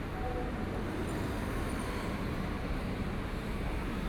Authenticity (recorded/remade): remade